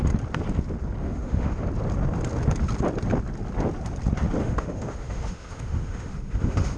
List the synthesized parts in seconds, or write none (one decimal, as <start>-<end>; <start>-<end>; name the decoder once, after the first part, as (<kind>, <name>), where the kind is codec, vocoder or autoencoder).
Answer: 1.0-1.6 (autoencoder, DAC-VAE); 4.4-6.8